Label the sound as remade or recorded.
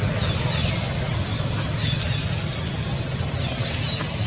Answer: recorded